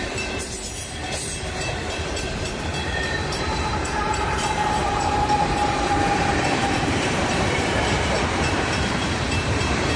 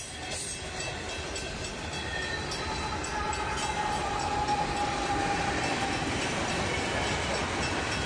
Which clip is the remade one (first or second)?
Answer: first